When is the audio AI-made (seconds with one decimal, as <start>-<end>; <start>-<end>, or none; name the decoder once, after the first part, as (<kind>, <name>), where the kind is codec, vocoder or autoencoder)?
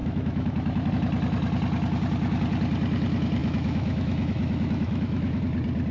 0.0-0.9 (autoencoder, DAC-VAE); 3.4-5.4